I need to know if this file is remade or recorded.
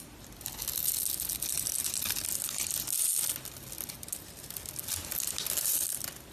recorded